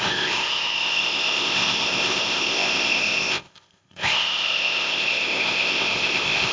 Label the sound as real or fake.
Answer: fake